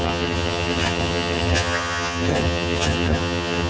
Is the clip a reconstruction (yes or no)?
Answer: yes